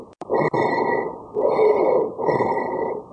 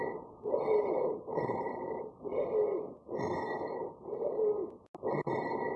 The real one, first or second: second